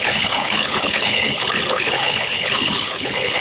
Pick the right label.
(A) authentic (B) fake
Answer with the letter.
B